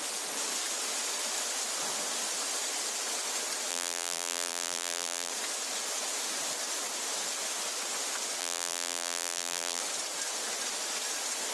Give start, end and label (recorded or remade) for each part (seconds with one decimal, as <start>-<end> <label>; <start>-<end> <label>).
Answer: 0.0-3.7 recorded; 3.7-5.3 remade; 5.3-8.4 recorded; 8.4-9.8 remade; 9.8-11.5 recorded